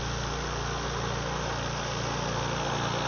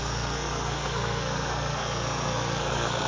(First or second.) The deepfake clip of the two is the second